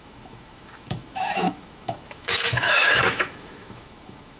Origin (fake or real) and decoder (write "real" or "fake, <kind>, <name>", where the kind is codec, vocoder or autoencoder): fake, autoencoder, DAC-VAE